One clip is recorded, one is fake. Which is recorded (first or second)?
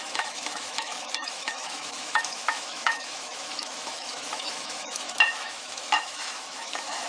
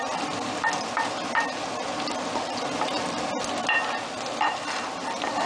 second